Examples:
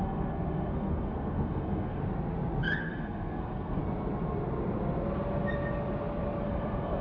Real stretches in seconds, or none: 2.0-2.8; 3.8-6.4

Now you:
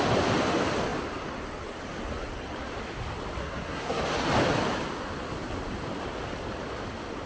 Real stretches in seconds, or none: 0.0-3.4; 4.0-7.3

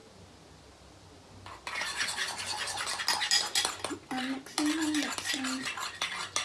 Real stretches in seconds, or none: 0.0-6.4

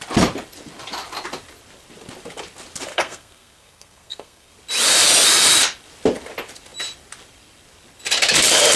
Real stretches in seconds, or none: 0.0-2.9; 4.5-8.8

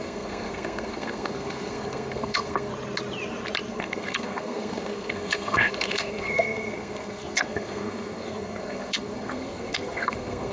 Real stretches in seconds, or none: 2.7-3.7

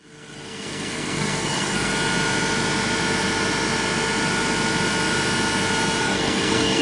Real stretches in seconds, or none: 1.9-6.0